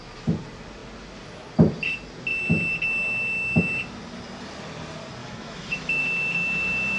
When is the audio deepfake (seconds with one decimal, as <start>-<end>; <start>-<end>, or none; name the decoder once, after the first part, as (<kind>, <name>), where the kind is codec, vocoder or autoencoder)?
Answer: 5.2-6.0 (autoencoder, DAC-VAE)